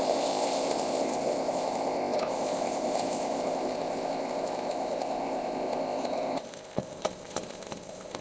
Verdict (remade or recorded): remade